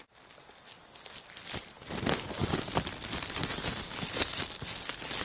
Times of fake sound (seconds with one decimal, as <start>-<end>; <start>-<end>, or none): none